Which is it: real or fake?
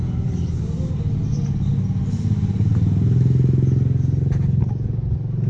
real